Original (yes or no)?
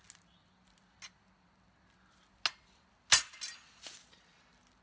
yes